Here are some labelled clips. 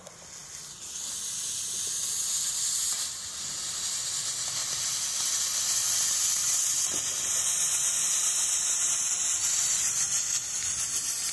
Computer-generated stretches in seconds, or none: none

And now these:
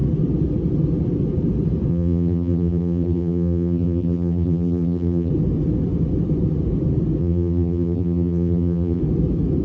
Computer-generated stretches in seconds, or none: 1.9-5.3 (vocoder, BigVGAN v2); 7.2-9.0

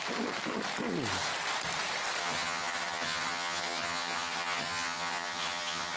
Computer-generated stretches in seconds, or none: 2.2-6.0 (vocoder, HiFi-GAN)

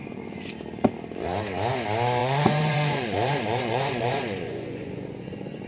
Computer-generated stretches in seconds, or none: 0.0-0.5 (vocoder, Vocos); 2.2-5.7

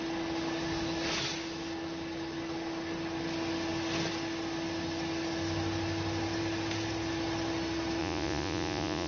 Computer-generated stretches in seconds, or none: 8.0-9.1 (vocoder, Vocos)

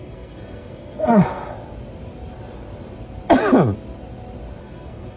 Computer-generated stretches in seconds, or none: 0.0-1.5 (codec, SNAC); 4.6-5.2